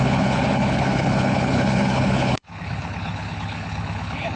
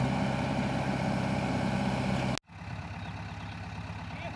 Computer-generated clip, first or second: first